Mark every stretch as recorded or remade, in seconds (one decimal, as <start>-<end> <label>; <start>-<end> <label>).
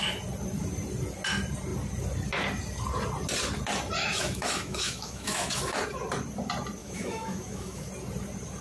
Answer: 0.0-4.0 recorded; 4.0-5.8 remade; 5.8-6.8 recorded; 6.8-7.9 remade; 7.9-8.6 recorded